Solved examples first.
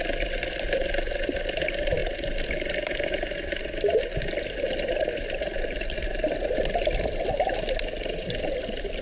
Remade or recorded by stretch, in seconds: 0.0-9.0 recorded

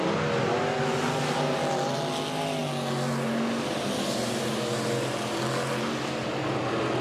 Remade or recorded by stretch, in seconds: 0.0-7.0 recorded